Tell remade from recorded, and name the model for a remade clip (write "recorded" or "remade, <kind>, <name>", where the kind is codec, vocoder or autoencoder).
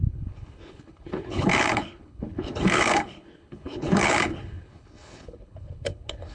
remade, codec, HILCodec